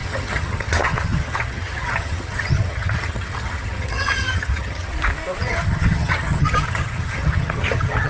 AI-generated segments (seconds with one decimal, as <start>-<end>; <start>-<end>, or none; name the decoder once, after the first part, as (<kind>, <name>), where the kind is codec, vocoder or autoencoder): 0.0-4.9 (vocoder, HiFi-GAN); 5.4-8.1